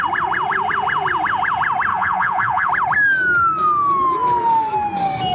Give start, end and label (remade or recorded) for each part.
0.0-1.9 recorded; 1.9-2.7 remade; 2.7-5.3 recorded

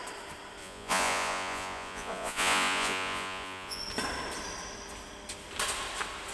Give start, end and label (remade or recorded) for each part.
0.0-0.6 recorded; 0.6-3.8 remade; 3.8-6.3 recorded

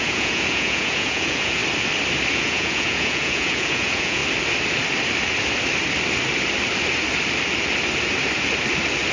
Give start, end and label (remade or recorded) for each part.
0.0-1.6 remade; 1.6-2.3 recorded; 2.3-4.2 remade; 4.2-9.1 recorded

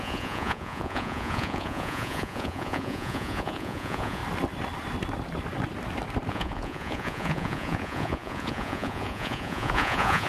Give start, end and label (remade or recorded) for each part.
0.0-4.2 remade; 4.2-6.3 recorded; 6.3-10.3 remade

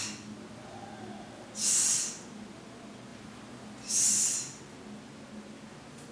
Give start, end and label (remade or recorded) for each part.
0.0-6.1 recorded